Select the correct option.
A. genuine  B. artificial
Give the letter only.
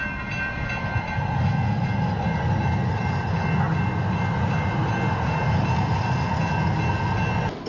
A